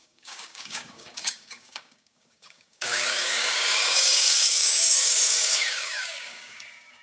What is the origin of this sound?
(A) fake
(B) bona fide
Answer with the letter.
A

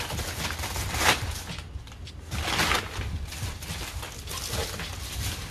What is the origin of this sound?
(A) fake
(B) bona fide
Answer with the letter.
B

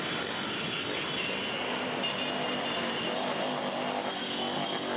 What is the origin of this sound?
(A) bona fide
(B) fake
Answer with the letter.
A